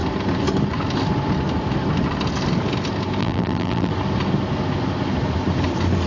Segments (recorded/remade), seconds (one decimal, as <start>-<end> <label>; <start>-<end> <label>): 0.0-3.2 recorded; 3.2-3.9 remade; 3.9-6.1 recorded